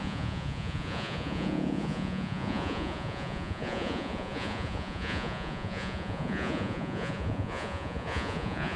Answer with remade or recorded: remade